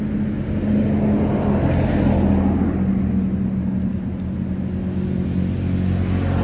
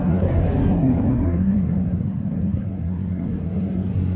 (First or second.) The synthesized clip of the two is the second